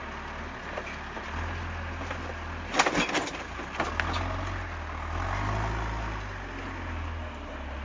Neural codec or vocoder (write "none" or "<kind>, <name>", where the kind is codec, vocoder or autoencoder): none